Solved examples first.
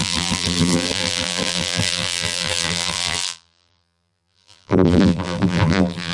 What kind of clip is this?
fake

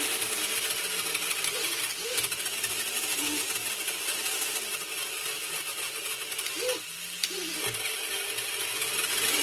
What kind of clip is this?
real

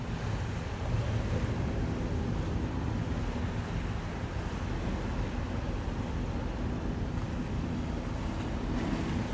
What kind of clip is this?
real